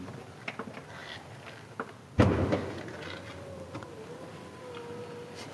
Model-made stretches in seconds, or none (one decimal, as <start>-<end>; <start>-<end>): none